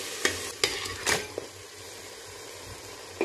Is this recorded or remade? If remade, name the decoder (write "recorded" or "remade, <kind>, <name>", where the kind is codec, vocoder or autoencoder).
recorded